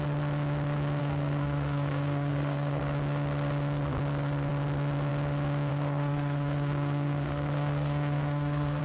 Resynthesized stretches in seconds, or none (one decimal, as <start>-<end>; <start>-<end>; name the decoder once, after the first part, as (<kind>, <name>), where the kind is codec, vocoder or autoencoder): 1.0-2.8 (codec, SNAC); 5.7-8.8